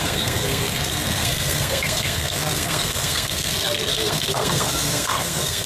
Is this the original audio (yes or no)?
no